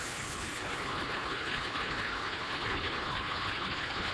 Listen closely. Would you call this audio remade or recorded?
remade